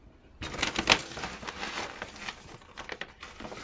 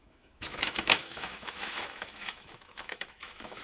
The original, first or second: first